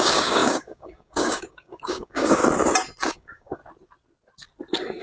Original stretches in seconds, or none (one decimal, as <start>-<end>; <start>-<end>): 2.4-3.1; 3.6-5.0